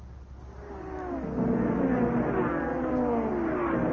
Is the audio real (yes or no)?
yes